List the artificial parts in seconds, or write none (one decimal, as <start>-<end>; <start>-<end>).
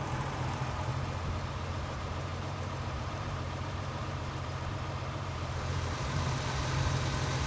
0.0-0.9; 1.5-7.5